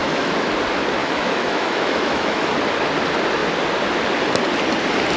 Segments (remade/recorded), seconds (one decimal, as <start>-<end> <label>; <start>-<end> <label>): 0.0-0.5 remade; 0.5-1.0 recorded; 1.0-2.5 remade; 2.5-5.2 recorded